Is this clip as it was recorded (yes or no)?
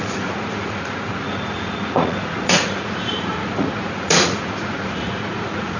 no